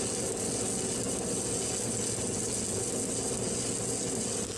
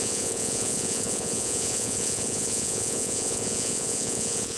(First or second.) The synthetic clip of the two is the second